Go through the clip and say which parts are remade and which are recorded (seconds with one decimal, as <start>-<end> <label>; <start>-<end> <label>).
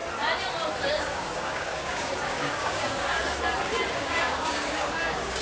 0.0-0.9 recorded; 0.9-3.2 remade; 3.2-3.9 recorded; 3.9-5.4 remade